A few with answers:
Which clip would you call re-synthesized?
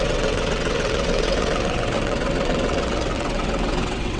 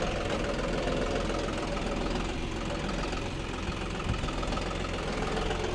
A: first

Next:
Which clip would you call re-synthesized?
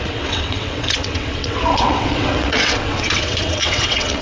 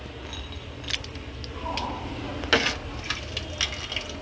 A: first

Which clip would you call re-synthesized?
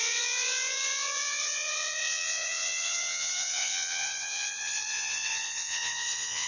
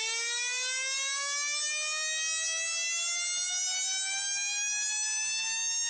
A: first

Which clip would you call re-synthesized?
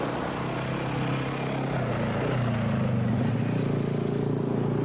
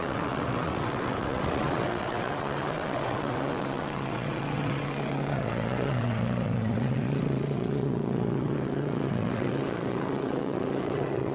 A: second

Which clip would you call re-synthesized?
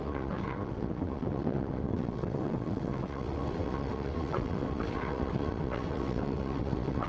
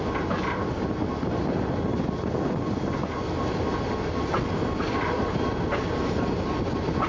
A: first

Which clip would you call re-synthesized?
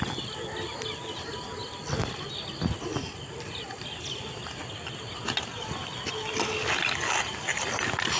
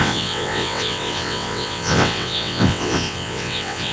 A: second